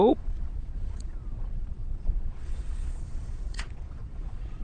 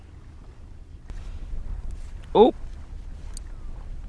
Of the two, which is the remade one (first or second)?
first